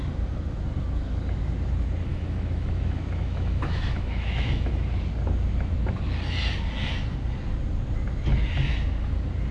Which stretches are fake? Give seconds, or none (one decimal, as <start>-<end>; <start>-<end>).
2.1-4.7